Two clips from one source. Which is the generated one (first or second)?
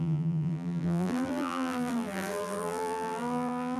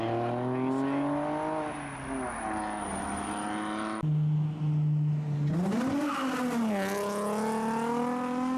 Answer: first